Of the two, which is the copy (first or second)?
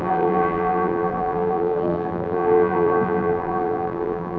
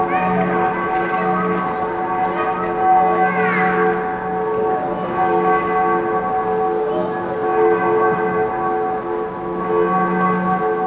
first